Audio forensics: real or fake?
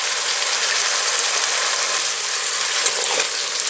real